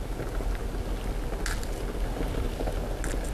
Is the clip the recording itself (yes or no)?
yes